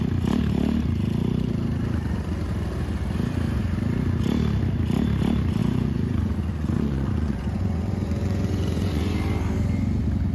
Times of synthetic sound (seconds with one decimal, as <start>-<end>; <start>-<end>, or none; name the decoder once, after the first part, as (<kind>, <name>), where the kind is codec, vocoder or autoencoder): 5.6-9.1 (vocoder, Vocos)